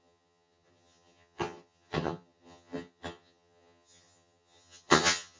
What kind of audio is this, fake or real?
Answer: fake